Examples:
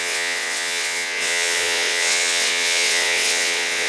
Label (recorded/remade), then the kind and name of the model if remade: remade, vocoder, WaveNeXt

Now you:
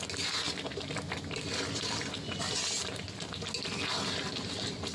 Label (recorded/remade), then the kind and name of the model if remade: recorded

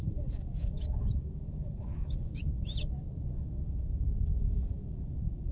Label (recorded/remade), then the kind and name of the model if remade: remade, vocoder, Vocos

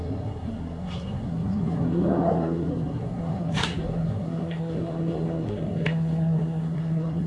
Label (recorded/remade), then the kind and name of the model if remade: remade, codec, SNAC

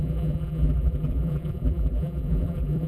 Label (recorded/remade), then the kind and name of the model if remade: remade, vocoder, BigVGAN v2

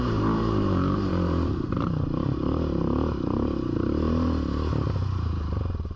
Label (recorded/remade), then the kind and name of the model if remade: remade, vocoder, BigVGAN v2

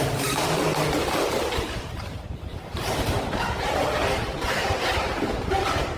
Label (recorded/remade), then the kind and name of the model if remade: remade, vocoder, BigVGAN v2